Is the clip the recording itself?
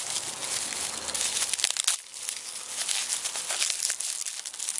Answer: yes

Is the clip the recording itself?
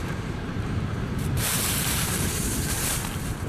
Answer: no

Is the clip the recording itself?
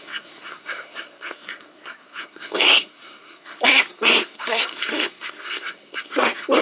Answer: no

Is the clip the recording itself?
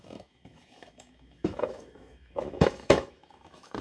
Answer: no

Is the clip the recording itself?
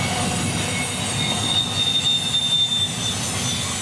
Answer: yes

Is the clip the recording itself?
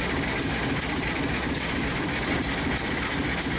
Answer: no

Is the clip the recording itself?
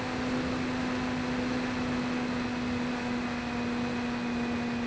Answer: yes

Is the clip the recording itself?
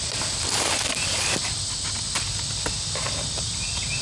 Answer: yes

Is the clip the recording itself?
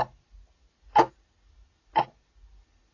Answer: yes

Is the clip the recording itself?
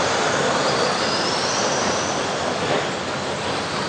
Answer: yes